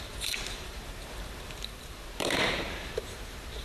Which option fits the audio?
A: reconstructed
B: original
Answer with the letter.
A